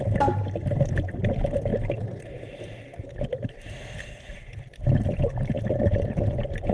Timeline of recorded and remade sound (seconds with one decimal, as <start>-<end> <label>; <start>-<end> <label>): 0.0-6.7 recorded